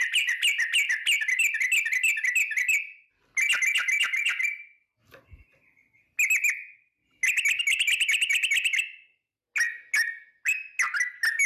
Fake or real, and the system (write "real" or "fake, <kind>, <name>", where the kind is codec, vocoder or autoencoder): real